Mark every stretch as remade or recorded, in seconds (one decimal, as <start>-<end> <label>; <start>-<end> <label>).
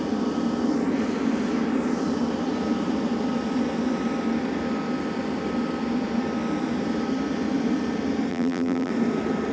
0.0-8.3 recorded; 8.3-8.9 remade; 8.9-9.5 recorded